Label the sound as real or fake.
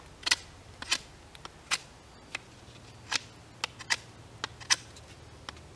real